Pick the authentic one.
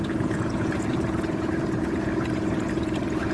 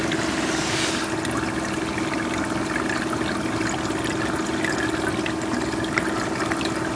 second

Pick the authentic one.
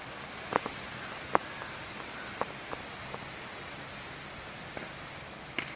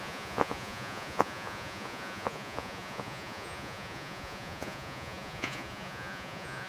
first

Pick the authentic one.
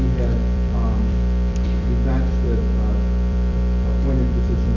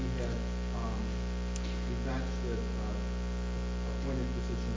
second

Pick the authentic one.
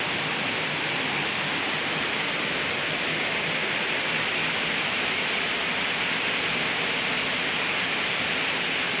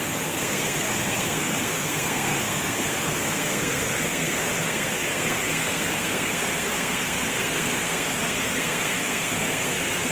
first